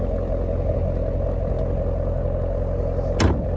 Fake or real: real